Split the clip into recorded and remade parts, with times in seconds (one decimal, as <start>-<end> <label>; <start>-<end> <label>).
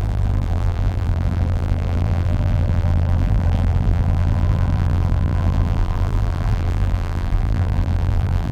0.0-8.5 remade